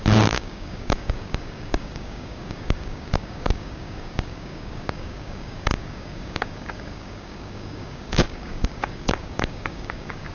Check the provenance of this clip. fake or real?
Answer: fake